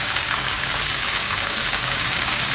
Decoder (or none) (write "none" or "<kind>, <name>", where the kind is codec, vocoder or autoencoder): codec, DAC